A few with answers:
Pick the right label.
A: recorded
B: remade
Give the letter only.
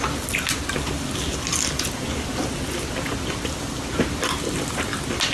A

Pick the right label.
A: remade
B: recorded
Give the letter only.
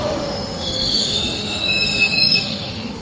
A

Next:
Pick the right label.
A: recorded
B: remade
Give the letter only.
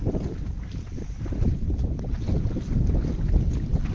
A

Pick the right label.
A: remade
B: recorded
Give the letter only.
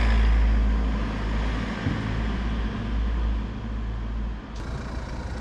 B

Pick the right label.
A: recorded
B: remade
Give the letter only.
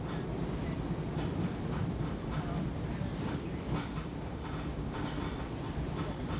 B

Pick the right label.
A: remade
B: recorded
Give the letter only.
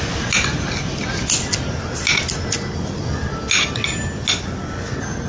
B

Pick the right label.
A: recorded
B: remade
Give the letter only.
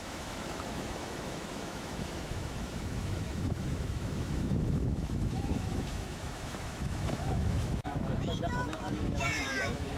B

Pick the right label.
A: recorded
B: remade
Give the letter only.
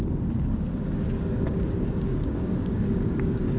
B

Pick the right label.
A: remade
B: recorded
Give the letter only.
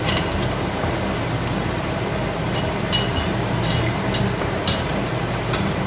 B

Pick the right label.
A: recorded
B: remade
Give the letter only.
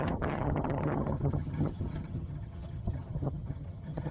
B